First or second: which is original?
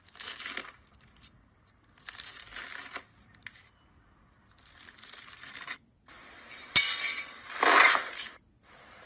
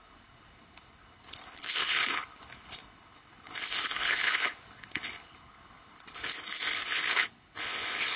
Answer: first